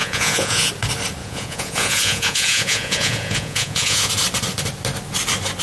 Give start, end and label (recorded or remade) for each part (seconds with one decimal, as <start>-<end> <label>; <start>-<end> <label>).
0.0-0.7 remade; 0.7-1.2 recorded; 1.2-4.1 remade; 4.1-5.6 recorded